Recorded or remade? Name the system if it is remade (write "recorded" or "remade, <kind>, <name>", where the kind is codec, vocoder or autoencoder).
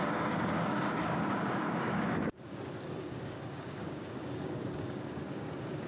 remade, codec, DAC